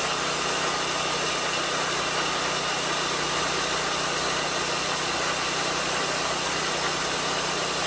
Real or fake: real